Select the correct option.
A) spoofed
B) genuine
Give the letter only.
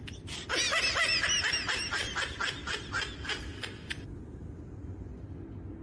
B